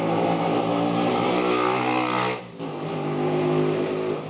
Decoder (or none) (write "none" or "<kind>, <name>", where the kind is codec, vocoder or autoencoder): none